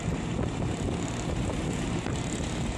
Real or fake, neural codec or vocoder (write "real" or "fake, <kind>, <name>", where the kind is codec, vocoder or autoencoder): real